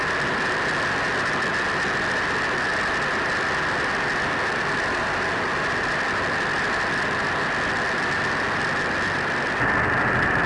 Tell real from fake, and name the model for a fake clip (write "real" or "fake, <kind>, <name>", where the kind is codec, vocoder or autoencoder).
real